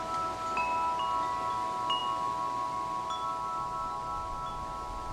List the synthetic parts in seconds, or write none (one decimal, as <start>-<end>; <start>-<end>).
none